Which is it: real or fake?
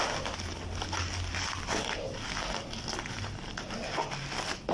real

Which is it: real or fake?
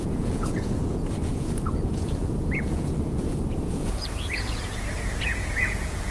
fake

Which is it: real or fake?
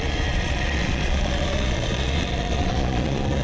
fake